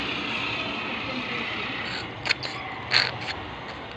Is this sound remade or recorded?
recorded